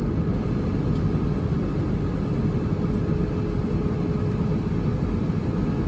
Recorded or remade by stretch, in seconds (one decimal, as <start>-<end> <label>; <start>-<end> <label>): 0.0-5.9 recorded